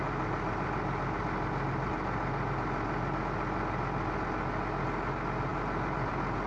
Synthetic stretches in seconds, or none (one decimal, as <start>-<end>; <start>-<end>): none

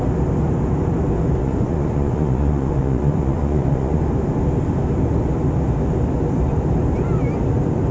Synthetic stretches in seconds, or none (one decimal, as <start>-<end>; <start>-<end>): 1.4-4.0

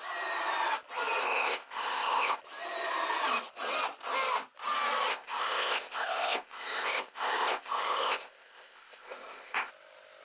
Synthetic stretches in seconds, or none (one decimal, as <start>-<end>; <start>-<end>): 1.2-2.4; 5.1-9.7

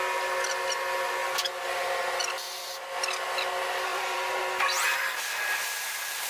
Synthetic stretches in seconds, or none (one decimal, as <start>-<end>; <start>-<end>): 3.9-4.4

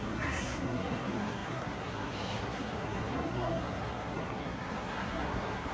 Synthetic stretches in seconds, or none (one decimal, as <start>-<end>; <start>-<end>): 0.0-5.7

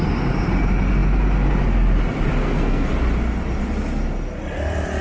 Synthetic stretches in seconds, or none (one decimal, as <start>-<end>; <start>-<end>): 2.4-2.9

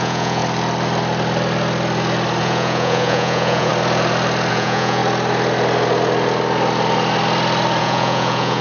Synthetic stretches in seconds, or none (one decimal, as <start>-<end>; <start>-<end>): 0.0-0.4; 2.4-3.7; 4.5-5.0; 7.8-8.6